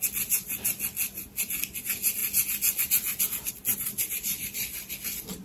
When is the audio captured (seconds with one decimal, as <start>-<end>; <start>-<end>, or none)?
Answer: 0.0-5.4